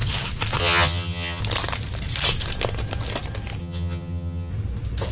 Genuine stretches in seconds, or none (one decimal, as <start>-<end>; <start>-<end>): 0.0-0.6; 1.4-3.6; 4.5-5.1